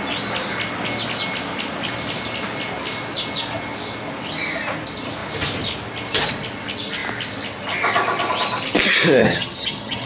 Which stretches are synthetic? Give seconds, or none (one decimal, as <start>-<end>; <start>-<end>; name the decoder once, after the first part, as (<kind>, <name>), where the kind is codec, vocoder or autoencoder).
9.2-10.1 (vocoder, HiFi-GAN)